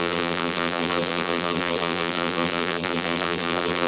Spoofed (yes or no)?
yes